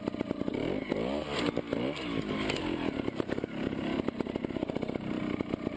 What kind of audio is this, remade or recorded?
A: recorded